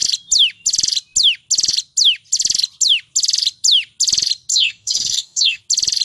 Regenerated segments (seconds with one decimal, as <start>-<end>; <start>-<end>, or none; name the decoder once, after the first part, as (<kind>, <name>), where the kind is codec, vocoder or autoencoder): 4.5-5.6 (codec, SNAC)